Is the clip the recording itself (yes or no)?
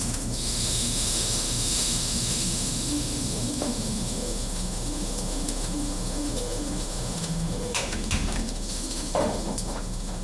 no